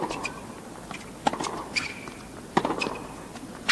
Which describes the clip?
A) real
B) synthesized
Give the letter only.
A